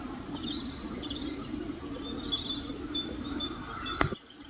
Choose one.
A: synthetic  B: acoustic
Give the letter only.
B